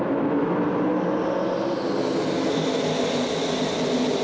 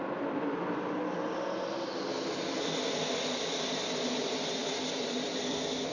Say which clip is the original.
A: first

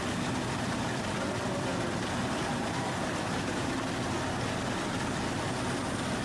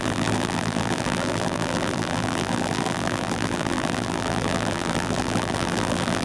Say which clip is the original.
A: first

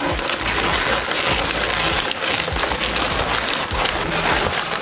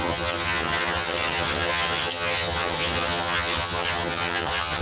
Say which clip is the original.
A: first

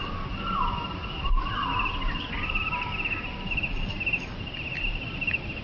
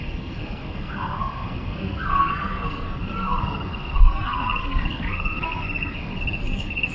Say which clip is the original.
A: first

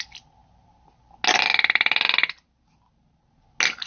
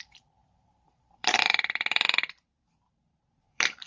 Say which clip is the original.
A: first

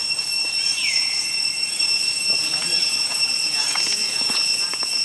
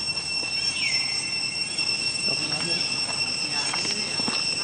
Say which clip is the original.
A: second